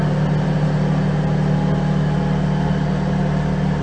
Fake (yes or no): no